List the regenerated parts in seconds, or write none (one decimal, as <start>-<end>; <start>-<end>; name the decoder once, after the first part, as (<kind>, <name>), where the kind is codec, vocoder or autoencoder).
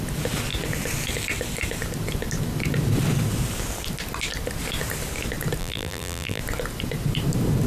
5.6-6.4 (vocoder, BigVGAN v2)